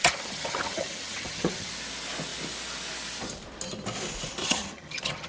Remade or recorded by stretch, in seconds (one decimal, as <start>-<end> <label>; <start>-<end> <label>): 0.0-1.7 remade; 1.7-4.4 recorded; 4.4-5.3 remade